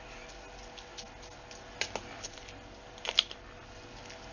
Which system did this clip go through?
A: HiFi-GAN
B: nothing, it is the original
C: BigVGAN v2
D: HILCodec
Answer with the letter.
B